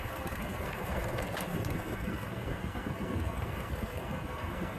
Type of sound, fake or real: fake